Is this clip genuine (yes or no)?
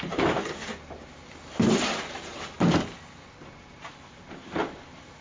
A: yes